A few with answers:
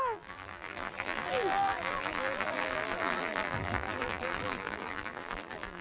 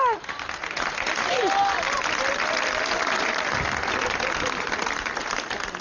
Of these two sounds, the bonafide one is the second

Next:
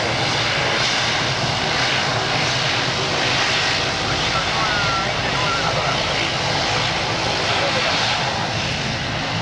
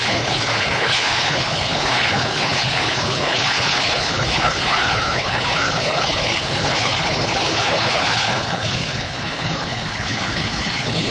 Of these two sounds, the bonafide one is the first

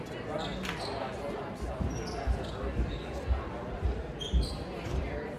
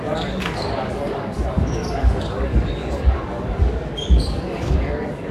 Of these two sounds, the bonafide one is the first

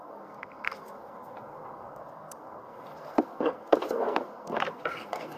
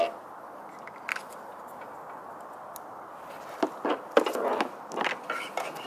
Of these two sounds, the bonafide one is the second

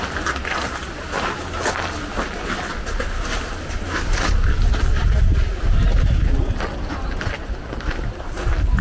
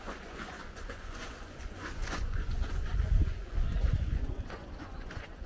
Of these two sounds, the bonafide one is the first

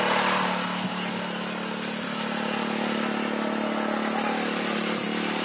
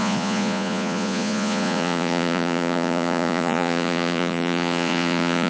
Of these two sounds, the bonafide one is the first